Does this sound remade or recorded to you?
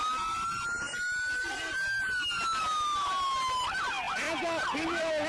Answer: recorded